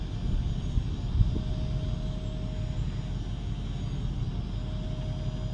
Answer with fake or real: real